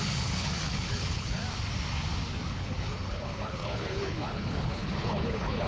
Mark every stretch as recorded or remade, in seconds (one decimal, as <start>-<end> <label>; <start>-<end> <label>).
0.0-1.4 remade; 1.4-2.5 recorded; 2.5-5.7 remade